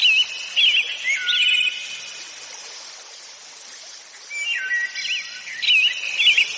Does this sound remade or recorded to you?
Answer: recorded